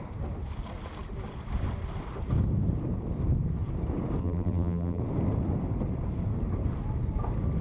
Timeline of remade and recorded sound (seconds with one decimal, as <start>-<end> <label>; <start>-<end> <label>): 0.0-4.2 recorded; 4.2-5.0 remade; 5.0-7.6 recorded